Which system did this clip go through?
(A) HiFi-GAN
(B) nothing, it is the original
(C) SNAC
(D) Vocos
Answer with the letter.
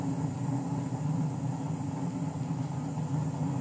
B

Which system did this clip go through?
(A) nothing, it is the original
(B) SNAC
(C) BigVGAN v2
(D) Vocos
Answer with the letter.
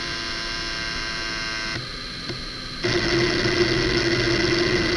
A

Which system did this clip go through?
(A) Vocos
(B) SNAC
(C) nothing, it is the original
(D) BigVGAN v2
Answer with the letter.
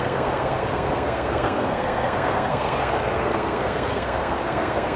B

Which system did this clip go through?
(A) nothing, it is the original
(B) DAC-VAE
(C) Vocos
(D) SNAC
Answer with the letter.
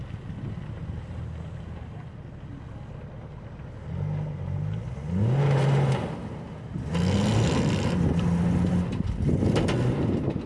A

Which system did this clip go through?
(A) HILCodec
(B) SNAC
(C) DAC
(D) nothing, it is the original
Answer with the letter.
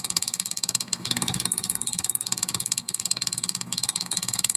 B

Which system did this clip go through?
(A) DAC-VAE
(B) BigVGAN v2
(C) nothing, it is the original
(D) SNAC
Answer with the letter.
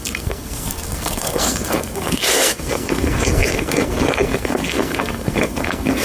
D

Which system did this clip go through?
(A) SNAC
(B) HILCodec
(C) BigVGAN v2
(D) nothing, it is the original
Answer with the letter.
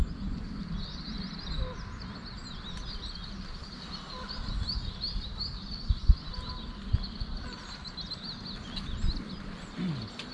D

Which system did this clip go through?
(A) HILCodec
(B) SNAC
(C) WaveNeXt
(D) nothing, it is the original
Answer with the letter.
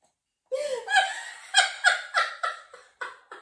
D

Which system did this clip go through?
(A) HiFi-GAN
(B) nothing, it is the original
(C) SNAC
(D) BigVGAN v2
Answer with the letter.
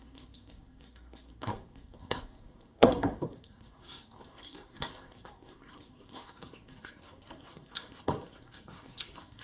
C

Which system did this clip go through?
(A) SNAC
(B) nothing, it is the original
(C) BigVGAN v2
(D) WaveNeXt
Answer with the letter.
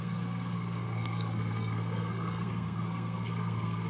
A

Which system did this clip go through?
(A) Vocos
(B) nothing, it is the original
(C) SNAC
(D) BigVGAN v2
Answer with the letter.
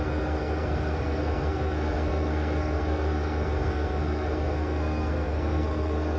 C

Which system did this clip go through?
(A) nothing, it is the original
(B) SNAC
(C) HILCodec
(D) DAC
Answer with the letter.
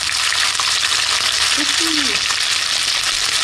A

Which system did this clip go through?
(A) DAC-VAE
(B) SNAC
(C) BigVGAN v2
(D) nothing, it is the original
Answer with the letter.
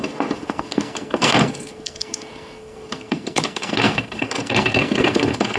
B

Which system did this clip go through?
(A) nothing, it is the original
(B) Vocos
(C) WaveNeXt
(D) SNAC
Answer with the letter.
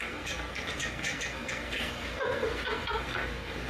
D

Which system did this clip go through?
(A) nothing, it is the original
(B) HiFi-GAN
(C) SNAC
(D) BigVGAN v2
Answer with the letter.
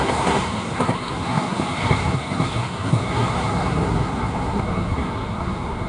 C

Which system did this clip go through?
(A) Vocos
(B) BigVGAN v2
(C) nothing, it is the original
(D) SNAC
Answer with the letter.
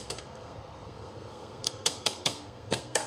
D